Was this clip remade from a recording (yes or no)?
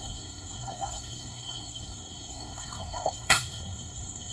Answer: yes